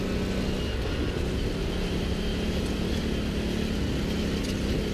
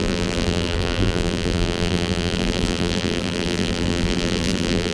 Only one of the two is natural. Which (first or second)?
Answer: first